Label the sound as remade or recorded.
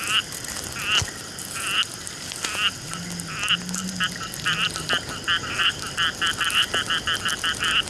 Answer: recorded